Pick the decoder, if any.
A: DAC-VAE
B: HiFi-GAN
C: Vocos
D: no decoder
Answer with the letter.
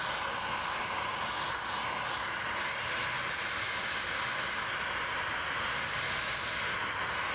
D